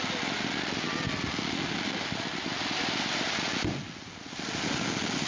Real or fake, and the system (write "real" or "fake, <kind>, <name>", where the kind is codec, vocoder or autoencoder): real